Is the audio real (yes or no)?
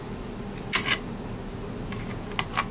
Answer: yes